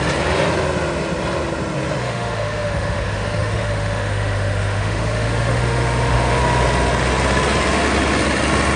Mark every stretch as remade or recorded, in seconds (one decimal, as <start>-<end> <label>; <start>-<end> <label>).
0.0-2.0 recorded; 2.0-6.4 remade; 6.4-8.8 recorded